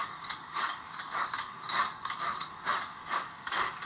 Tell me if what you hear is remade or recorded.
remade